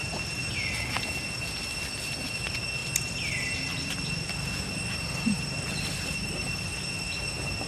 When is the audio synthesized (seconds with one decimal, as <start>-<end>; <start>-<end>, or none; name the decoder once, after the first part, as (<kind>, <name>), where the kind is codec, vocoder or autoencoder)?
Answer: none